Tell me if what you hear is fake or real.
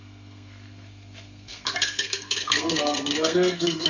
fake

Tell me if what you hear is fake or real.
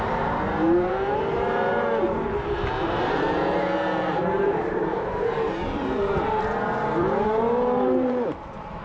fake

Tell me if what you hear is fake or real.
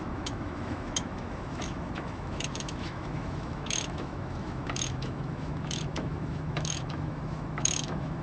fake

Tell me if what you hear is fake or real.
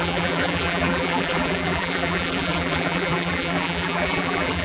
fake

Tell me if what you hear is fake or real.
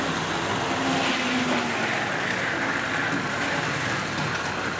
real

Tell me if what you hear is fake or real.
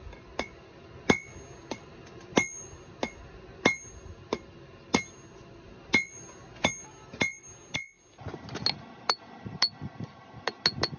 real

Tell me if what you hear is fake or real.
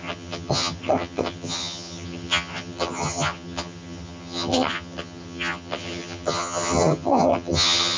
fake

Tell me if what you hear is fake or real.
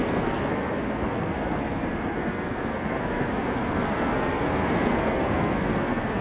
fake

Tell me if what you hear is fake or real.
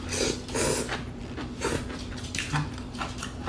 real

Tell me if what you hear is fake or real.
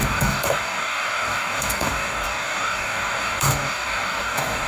fake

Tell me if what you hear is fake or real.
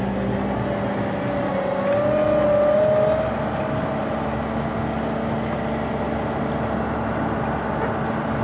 real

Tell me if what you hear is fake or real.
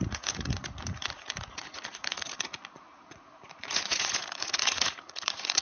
fake